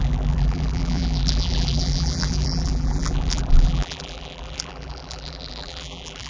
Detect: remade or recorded remade